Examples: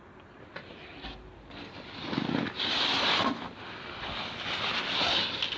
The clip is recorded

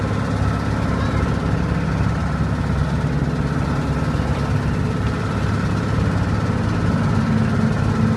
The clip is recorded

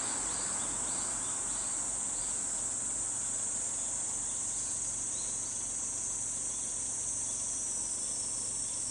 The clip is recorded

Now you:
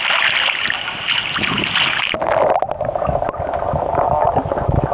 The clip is recorded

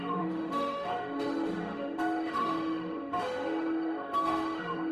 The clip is remade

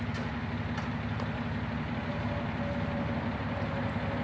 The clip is recorded